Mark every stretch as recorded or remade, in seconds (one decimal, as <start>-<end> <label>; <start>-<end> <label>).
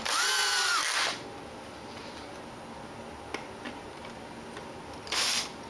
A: 0.0-5.7 recorded